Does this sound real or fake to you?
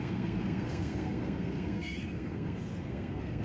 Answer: fake